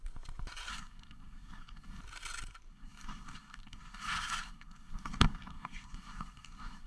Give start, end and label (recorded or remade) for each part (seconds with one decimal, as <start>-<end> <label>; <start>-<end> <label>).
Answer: 0.0-0.7 recorded; 0.7-2.0 remade; 2.0-2.7 recorded; 2.7-6.9 remade